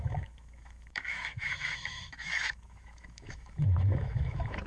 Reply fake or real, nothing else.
fake